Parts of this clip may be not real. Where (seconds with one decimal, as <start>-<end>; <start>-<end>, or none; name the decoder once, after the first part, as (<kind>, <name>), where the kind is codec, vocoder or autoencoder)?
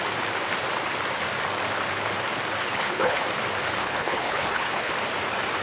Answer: 2.6-3.2 (codec, HILCodec); 3.8-4.9